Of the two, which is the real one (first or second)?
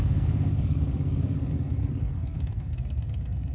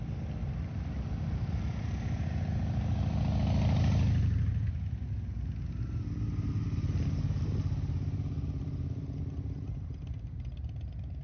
second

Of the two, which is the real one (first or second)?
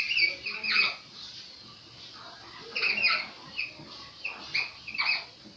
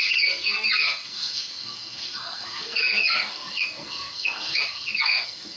first